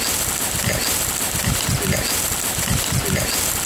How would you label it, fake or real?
real